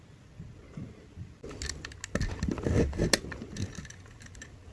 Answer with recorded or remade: recorded